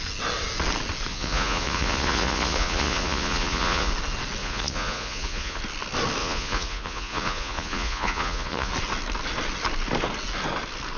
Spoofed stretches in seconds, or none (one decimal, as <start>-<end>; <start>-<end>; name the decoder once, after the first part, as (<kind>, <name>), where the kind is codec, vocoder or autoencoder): 1.1-3.9 (vocoder, Vocos); 4.4-5.6; 6.2-8.7